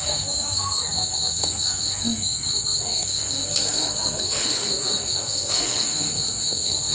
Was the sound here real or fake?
fake